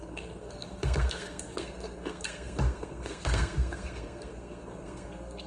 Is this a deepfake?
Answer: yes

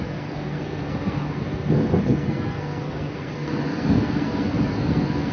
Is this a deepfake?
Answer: yes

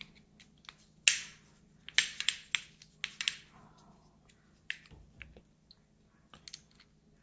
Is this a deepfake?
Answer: no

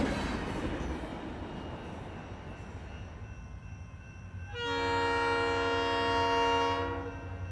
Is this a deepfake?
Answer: no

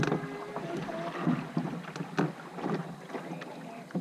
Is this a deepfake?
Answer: no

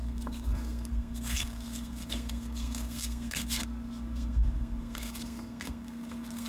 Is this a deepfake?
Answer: yes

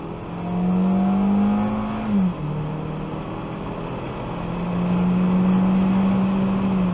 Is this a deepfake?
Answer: no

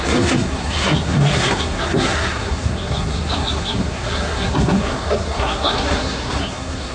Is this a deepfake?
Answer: yes